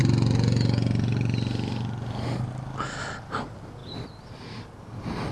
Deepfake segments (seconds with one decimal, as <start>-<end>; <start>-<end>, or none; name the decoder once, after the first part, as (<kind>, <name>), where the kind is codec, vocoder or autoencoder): none